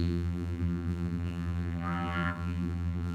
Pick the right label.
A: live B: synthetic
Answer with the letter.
B